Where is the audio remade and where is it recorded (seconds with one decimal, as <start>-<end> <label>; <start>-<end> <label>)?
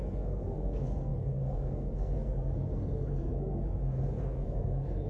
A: 0.0-5.1 remade